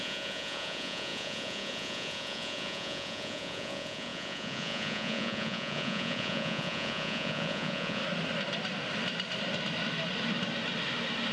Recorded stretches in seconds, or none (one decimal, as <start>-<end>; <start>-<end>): 8.0-11.3